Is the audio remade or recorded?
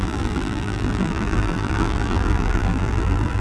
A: remade